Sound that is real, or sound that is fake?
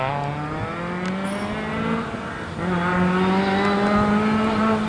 real